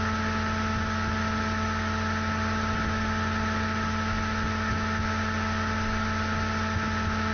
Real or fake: real